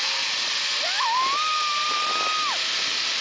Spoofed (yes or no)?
no